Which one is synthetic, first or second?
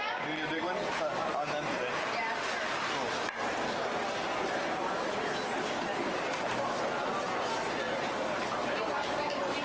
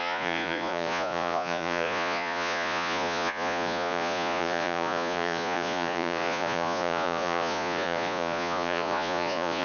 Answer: second